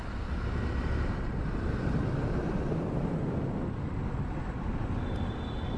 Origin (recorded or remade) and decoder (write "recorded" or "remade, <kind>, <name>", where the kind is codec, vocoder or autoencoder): recorded